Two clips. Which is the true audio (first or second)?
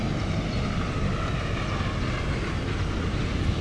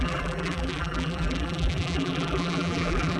first